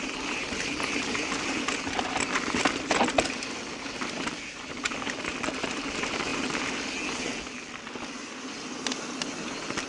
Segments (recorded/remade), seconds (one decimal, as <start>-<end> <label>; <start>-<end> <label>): 0.0-6.3 remade; 6.3-7.8 recorded; 7.8-9.9 remade